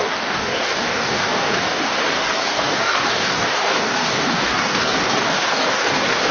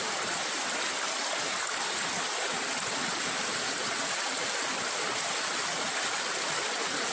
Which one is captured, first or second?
second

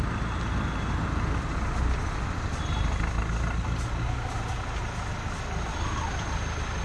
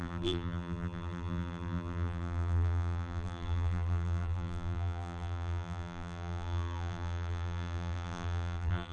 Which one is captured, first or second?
first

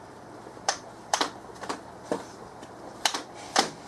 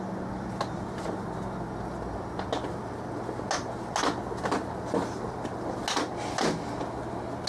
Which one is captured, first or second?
second